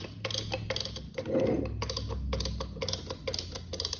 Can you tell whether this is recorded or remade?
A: recorded